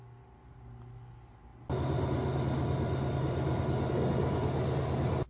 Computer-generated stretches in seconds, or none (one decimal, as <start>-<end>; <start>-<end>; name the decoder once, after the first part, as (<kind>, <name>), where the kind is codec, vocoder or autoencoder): none